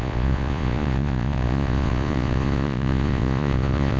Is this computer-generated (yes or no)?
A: yes